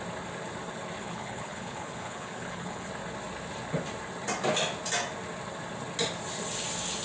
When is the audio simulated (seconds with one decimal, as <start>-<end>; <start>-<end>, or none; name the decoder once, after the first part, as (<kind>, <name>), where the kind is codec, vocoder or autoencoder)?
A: 1.0-2.9 (codec, HILCodec)